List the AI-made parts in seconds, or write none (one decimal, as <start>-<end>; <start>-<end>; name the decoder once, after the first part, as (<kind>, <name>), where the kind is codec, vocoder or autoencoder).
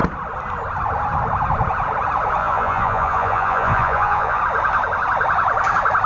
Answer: 2.4-4.4 (vocoder, Vocos)